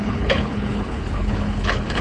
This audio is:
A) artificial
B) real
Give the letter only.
A